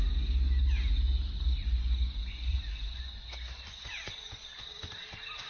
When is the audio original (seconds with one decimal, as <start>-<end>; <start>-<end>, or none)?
0.0-1.6; 4.9-5.5